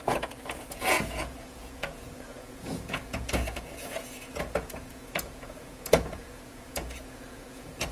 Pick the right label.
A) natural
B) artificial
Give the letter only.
B